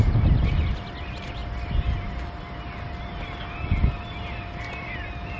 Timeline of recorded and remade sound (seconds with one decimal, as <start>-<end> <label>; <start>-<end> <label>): 0.0-5.4 recorded